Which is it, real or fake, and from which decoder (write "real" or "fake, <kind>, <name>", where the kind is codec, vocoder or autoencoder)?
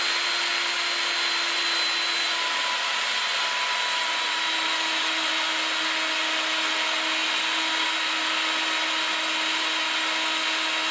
real